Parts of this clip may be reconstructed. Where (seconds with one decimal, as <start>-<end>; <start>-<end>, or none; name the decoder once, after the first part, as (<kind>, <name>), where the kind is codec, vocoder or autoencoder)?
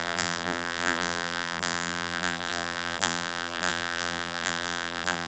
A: 0.0-5.3 (vocoder, BigVGAN v2)